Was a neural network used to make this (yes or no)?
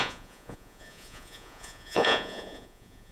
yes